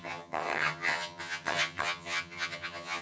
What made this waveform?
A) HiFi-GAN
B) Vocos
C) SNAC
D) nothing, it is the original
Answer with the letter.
A